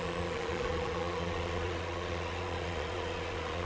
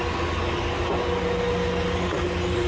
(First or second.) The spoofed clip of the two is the first